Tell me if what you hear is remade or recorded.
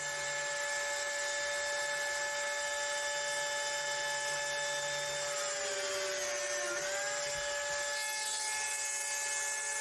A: recorded